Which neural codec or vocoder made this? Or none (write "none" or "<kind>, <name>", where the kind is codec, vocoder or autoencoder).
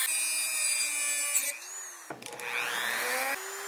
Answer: none